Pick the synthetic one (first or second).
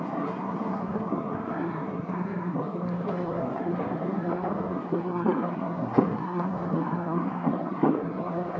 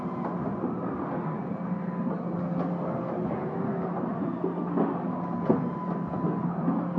first